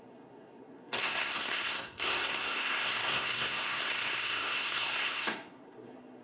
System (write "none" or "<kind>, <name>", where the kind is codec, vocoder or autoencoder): codec, SNAC